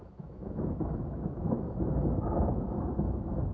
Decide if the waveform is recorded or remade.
remade